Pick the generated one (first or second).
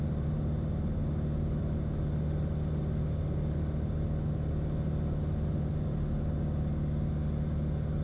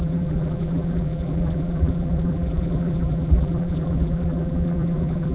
second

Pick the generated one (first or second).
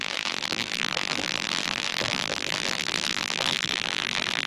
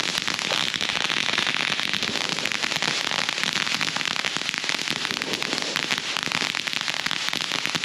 first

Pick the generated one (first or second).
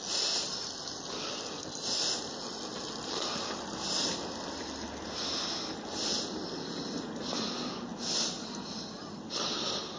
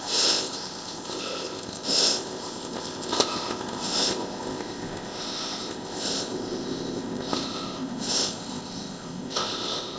second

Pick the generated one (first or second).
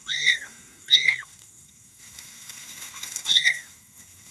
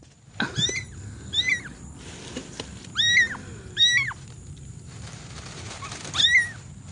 first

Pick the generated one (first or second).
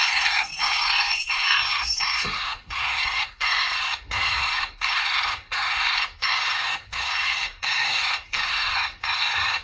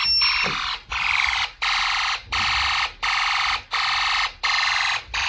first